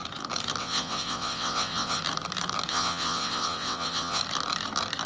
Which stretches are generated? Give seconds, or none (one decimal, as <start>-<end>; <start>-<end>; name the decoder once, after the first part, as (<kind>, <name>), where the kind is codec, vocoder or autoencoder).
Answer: 0.6-2.0 (vocoder, WaveNeXt); 2.7-4.2

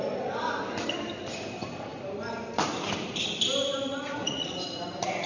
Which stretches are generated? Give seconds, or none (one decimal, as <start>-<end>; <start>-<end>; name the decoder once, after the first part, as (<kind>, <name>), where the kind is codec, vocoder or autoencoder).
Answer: 3.9-4.6 (vocoder, Vocos)